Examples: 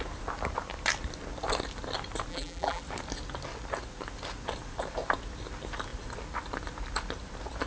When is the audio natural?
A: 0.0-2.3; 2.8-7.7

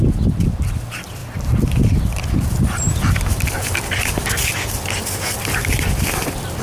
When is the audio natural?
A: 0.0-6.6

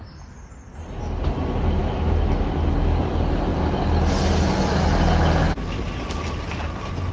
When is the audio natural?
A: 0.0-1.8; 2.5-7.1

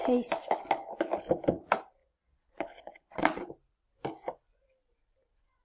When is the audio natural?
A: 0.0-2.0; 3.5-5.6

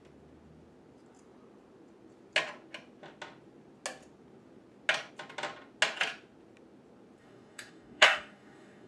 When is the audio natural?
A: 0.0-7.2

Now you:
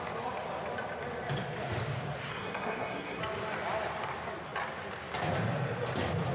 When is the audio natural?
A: 0.0-2.3; 3.2-6.3

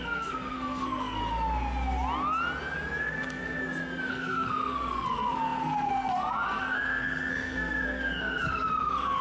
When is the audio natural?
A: 1.2-3.0; 3.6-4.1

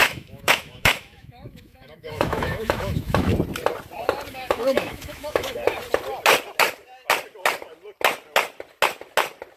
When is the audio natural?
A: 3.3-4.3; 5.6-9.6